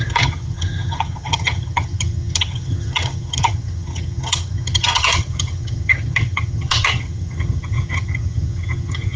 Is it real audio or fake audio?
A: fake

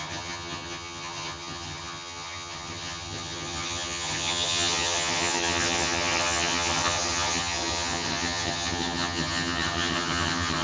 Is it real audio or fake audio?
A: fake